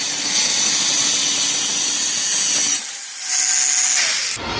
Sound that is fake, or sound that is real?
real